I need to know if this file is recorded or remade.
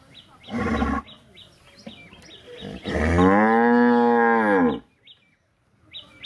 recorded